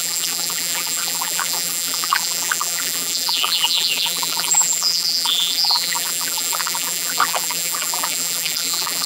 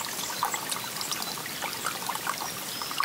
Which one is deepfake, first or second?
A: first